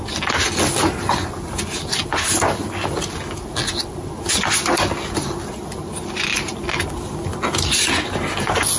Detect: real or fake real